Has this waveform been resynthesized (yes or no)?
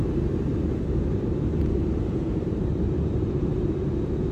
yes